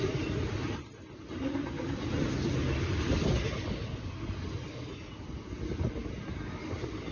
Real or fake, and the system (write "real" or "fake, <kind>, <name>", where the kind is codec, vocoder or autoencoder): real